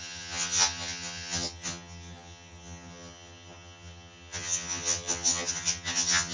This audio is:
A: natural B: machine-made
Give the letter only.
B